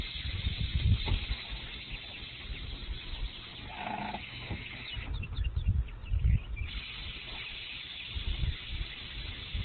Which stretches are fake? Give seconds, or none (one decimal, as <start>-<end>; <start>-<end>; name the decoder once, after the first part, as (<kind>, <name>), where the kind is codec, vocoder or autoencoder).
none